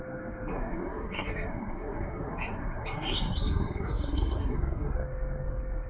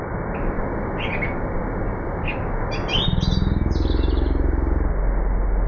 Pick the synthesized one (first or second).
first